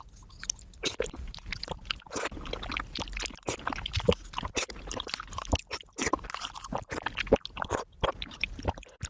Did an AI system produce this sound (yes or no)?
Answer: no